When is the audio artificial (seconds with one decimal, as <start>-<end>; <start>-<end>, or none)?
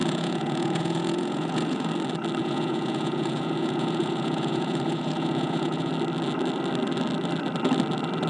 0.0-1.9; 2.4-5.9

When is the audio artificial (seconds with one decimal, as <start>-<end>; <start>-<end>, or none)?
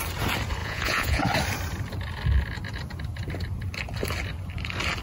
0.6-1.2